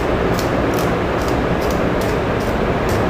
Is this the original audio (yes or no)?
yes